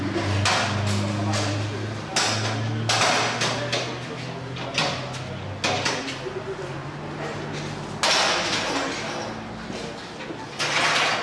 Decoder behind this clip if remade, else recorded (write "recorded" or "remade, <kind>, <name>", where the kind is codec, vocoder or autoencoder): recorded